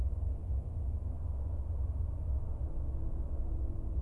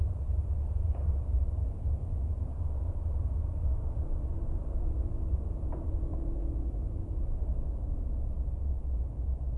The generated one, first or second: second